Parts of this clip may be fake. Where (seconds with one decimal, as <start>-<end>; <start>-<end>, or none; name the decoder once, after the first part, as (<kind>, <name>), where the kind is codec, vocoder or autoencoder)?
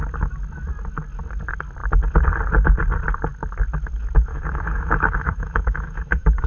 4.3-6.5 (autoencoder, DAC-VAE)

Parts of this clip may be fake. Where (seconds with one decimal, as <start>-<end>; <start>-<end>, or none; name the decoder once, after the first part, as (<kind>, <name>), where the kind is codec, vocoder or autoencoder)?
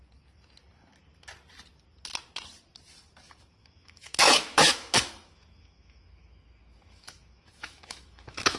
3.6-8.6 (autoencoder, DAC-VAE)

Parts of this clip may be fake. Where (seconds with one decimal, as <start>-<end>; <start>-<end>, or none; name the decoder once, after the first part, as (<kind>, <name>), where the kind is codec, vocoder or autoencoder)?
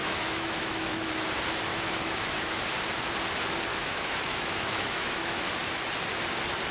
0.0-1.1 (autoencoder, DAC-VAE); 1.7-2.6; 3.7-5.4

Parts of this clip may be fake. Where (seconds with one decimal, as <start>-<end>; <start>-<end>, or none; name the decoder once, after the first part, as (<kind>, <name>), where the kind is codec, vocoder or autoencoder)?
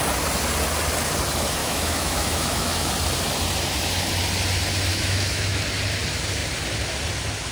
1.6-2.9 (autoencoder, DAC-VAE); 4.9-5.6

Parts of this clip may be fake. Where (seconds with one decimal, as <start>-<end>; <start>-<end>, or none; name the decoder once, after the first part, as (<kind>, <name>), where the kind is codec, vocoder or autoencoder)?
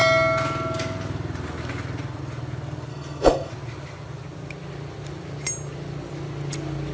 2.9-3.5 (autoencoder, DAC-VAE)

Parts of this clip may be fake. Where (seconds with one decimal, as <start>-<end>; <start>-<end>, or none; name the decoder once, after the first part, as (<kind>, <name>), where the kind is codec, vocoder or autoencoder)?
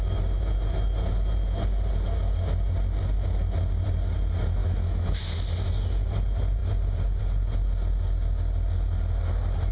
4.6-5.2 (autoencoder, DAC-VAE)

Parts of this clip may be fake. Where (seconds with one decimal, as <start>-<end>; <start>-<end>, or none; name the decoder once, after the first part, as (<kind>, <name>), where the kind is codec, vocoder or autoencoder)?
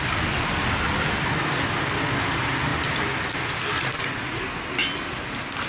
none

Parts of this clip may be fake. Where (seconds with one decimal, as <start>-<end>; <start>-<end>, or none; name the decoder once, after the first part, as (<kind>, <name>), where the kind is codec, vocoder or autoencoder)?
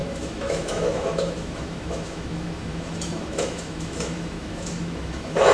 0.0-5.5 (autoencoder, DAC-VAE)